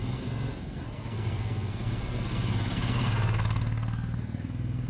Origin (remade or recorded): remade